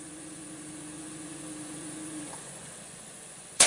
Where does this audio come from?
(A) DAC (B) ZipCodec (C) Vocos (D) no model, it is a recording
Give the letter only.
C